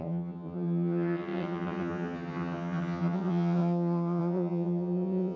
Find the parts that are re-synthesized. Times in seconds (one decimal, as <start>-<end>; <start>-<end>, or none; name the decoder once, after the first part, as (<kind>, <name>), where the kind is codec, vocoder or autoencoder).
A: 0.0-5.4 (vocoder, HiFi-GAN)